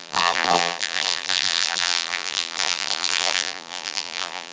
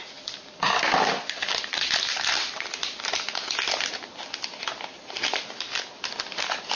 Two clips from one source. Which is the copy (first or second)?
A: first